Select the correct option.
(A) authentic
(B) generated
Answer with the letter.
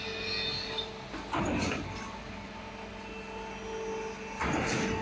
A